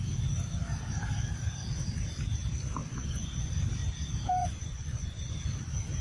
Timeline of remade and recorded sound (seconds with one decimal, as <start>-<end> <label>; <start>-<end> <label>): 0.0-2.8 recorded; 2.8-3.5 remade; 3.5-4.4 recorded; 4.4-5.4 remade; 5.4-6.0 recorded